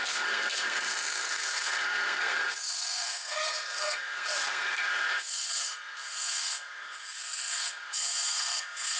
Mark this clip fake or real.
fake